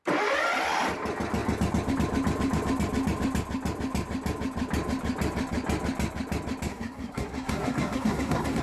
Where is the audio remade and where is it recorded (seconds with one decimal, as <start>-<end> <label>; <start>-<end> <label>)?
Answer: 0.0-6.7 recorded; 6.7-8.6 remade